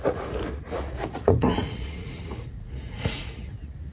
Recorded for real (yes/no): no